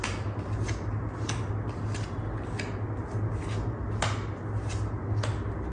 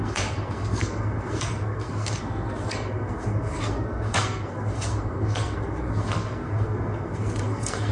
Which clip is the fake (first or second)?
second